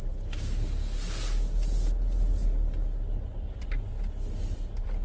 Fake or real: real